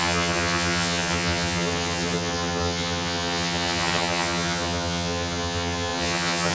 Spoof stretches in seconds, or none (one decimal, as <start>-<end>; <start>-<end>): 0.0-6.5